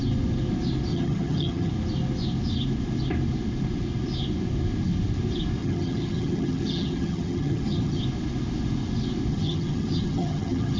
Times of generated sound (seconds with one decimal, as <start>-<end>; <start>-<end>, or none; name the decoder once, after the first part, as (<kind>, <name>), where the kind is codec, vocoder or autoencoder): 0.9-1.7 (vocoder, HiFi-GAN); 5.6-8.0; 9.3-10.8